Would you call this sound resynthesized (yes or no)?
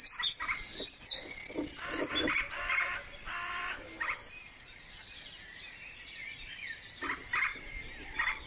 yes